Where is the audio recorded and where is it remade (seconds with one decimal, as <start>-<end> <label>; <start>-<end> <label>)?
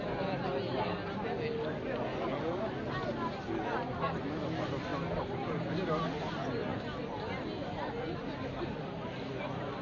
0.0-9.8 recorded